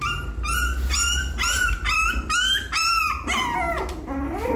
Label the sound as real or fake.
real